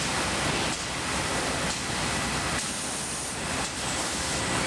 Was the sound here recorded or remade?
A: recorded